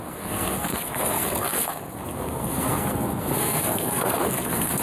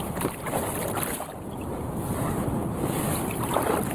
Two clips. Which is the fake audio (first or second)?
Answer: first